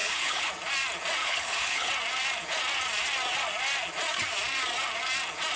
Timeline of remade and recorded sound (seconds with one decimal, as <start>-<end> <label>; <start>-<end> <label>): 0.0-0.5 remade; 0.5-1.2 recorded; 1.2-1.9 remade; 1.9-5.6 recorded